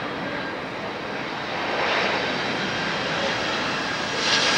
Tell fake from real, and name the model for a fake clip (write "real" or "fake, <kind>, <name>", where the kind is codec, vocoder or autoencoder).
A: real